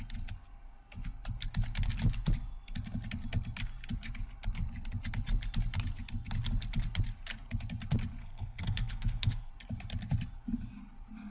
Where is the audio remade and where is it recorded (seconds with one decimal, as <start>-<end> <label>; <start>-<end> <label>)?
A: 0.0-8.2 recorded; 8.2-9.5 remade; 9.5-11.3 recorded